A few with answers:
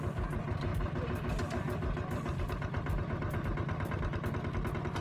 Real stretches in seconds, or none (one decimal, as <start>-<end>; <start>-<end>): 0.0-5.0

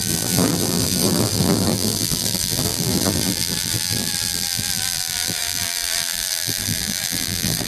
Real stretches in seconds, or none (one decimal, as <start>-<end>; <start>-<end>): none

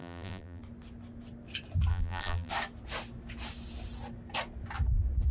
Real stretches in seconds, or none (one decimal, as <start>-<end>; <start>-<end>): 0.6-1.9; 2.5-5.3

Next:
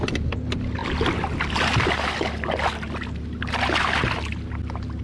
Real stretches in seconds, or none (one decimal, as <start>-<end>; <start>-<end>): 0.0-5.0

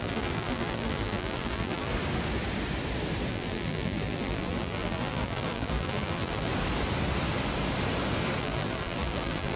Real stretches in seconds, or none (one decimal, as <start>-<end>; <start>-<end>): 1.9-3.3; 6.5-8.4

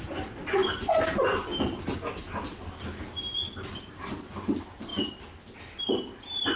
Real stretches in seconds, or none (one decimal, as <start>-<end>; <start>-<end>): 0.0-6.6

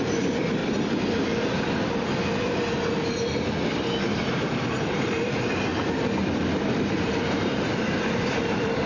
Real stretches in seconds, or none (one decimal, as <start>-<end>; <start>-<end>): 0.6-4.0; 5.7-6.8

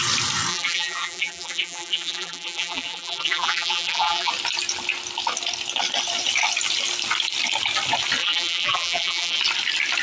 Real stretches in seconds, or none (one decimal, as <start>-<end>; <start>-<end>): 0.0-0.5; 4.3-8.2; 9.4-10.0